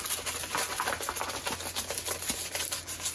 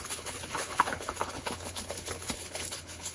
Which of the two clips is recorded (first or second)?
first